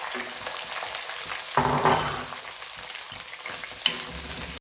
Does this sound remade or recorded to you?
recorded